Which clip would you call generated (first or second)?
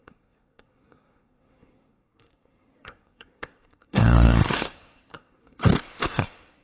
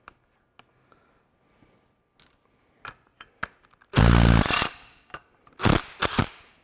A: first